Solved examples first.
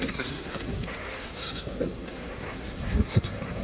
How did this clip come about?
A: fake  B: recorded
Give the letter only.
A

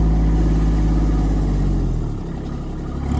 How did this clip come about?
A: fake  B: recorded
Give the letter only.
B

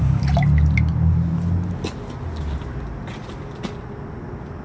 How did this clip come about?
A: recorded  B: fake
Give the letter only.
A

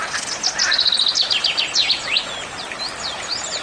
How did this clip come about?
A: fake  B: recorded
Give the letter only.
B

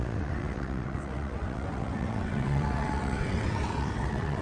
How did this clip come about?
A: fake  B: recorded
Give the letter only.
A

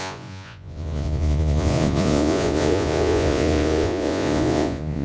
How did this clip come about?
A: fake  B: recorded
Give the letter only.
A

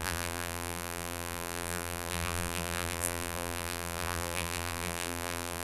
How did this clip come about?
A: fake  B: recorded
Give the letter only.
A